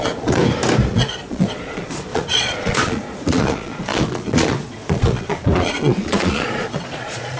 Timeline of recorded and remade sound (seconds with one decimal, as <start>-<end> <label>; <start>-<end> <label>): 0.0-0.4 remade; 0.4-0.9 recorded; 0.9-7.4 remade